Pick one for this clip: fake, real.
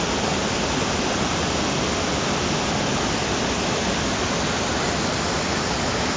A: real